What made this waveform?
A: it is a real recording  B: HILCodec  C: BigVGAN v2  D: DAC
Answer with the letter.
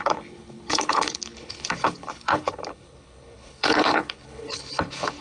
B